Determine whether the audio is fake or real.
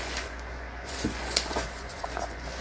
fake